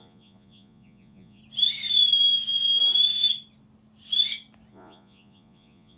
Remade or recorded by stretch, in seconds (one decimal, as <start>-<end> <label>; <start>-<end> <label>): 0.0-1.4 remade; 1.4-4.7 recorded; 4.7-6.0 remade